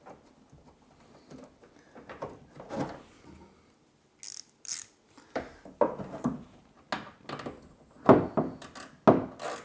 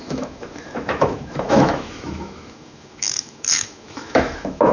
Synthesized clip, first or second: second